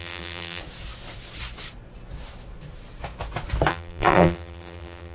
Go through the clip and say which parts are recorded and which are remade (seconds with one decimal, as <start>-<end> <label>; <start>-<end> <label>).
0.0-0.6 remade; 0.6-3.7 recorded; 3.7-5.1 remade